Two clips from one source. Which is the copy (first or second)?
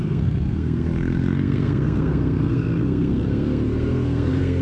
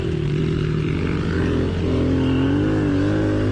first